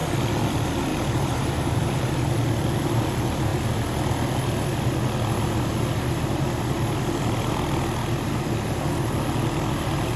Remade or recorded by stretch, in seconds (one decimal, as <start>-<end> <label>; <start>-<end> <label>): 0.0-0.9 recorded; 0.9-2.3 remade; 2.3-10.2 recorded